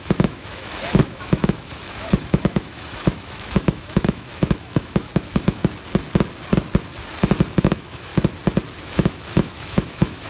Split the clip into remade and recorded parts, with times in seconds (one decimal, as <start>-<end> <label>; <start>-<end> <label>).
0.0-5.6 remade; 5.6-7.6 recorded; 7.6-8.1 remade; 8.1-8.8 recorded; 8.8-10.3 remade